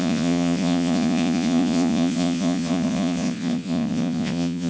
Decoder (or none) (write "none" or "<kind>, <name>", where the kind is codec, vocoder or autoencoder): vocoder, Vocos